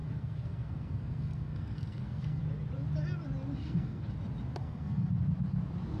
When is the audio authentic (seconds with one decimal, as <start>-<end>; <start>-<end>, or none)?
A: 2.4-3.6; 4.1-4.6; 5.1-6.0